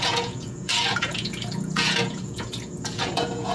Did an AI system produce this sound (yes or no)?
yes